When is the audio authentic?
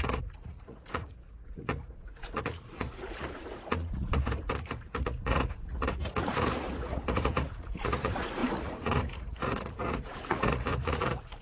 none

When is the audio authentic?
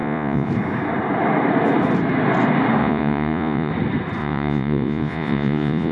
0.5-2.8; 3.7-4.2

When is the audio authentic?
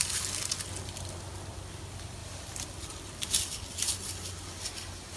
0.0-5.2